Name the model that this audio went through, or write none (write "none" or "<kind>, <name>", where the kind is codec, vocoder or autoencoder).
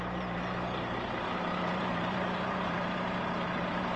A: vocoder, BigVGAN v2